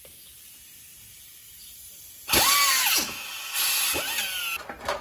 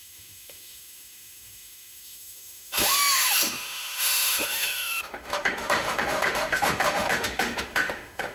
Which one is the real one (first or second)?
first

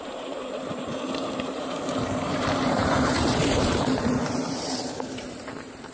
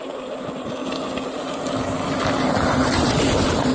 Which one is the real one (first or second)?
second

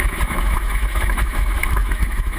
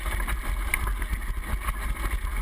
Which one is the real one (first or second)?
second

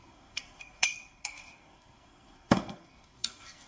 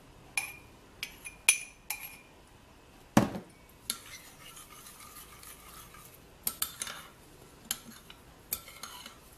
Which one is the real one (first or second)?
second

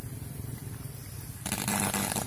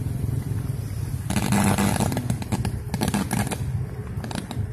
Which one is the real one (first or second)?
second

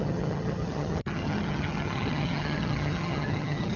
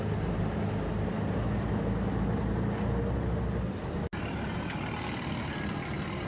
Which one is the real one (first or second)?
second